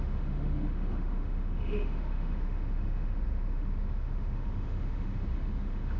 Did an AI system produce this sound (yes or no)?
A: yes